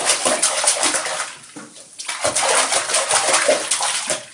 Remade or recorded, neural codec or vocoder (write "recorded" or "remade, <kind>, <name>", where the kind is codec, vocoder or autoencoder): recorded